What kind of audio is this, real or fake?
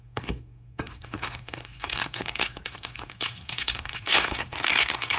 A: fake